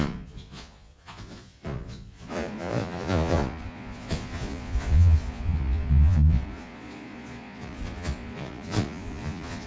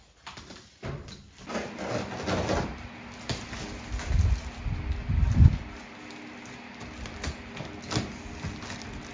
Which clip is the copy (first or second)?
first